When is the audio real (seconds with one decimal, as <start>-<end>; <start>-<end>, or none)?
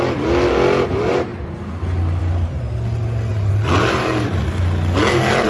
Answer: 0.0-3.3; 4.4-5.5